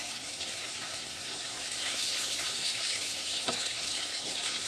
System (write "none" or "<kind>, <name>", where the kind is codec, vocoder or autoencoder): codec, SNAC